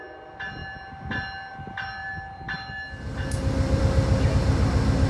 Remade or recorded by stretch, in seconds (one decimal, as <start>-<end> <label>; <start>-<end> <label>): 0.0-5.1 recorded